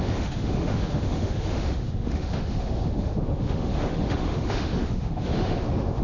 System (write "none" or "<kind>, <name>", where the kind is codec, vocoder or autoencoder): autoencoder, DAC-VAE